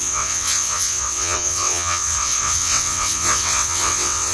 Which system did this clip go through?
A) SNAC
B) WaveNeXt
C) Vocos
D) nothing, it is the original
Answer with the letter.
B